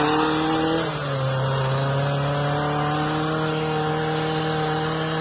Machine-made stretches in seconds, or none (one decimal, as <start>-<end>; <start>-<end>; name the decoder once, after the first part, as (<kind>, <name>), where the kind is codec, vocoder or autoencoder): none